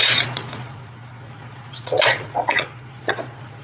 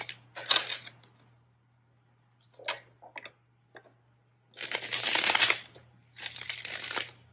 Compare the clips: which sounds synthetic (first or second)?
first